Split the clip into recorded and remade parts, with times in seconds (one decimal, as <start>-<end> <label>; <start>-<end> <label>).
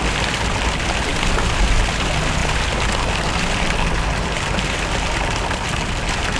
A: 0.0-6.4 recorded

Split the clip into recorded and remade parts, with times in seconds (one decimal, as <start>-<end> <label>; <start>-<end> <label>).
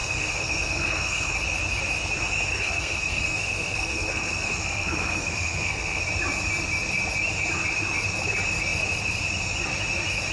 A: 0.0-1.3 remade; 1.3-2.5 recorded; 2.5-6.0 remade; 6.0-10.3 recorded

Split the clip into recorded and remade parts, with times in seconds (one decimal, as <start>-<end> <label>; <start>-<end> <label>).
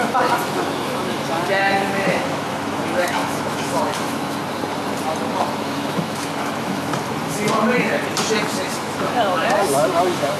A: 0.0-4.4 remade; 4.4-5.3 recorded; 5.3-6.9 remade; 6.9-8.5 recorded; 8.5-10.4 remade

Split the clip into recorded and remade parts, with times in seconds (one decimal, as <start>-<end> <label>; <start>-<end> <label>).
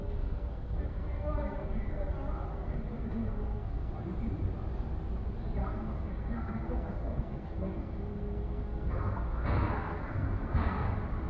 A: 0.0-2.1 remade; 2.1-2.5 recorded; 2.5-3.9 remade; 3.9-5.6 recorded; 5.6-10.9 remade; 10.9-11.3 recorded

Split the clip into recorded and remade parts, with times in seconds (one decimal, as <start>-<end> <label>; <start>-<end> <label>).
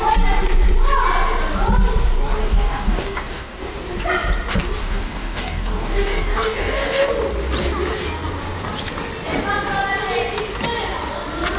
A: 0.0-2.4 recorded; 2.4-3.7 remade; 3.7-4.8 recorded; 4.8-7.1 remade; 7.1-11.6 recorded